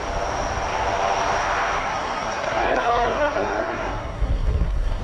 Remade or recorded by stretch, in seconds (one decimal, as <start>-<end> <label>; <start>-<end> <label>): 0.0-1.8 recorded; 1.8-5.0 remade